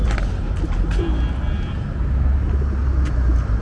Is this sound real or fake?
real